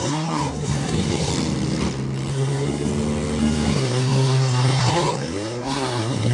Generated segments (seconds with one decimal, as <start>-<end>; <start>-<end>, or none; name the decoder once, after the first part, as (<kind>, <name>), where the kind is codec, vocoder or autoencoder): 0.0-1.3 (codec, SNAC); 2.3-2.9; 3.4-6.3